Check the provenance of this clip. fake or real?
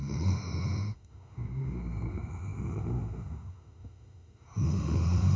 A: fake